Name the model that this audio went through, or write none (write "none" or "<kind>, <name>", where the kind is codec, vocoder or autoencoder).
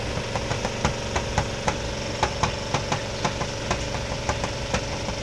none